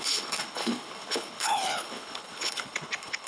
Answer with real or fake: fake